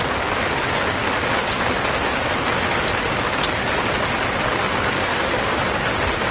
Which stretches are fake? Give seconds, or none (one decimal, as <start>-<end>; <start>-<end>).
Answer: 5.1-5.6